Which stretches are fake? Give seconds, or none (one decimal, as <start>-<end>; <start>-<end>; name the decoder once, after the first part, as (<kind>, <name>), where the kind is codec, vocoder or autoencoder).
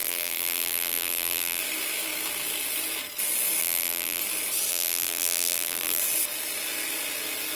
0.0-1.6 (vocoder, BigVGAN v2); 3.6-4.2; 4.7-6.0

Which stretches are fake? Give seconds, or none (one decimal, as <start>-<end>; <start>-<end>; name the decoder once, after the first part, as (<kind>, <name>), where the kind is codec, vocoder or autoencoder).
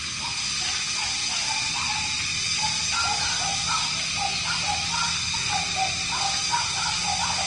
none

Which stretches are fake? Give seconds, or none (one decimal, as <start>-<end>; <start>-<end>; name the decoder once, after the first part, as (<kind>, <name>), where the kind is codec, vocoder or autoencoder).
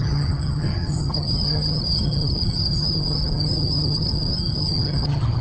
0.0-5.4 (vocoder, HiFi-GAN)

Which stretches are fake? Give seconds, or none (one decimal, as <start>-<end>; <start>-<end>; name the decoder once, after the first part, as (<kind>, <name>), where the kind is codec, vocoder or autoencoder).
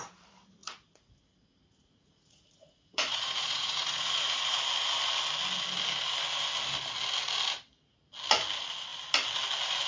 0.6-4.6 (vocoder, Vocos)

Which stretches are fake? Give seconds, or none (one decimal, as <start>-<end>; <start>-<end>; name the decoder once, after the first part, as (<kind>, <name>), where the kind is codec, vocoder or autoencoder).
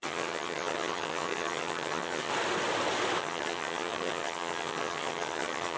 0.0-2.3 (vocoder, HiFi-GAN); 3.2-5.8